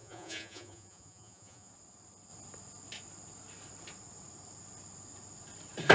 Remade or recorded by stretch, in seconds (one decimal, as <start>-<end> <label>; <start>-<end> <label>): 0.0-1.7 remade; 1.7-5.9 recorded